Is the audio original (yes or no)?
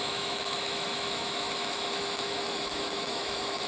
no